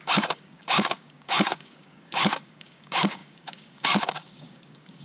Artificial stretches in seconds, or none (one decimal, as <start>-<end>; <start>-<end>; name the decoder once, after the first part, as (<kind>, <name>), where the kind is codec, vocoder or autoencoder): 0.0-5.0 (codec, DAC)